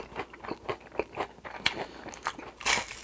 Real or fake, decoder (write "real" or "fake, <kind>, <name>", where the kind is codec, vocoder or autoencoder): real